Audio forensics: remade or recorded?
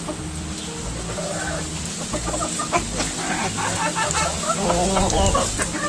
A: recorded